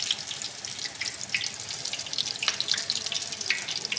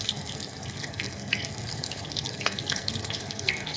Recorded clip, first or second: first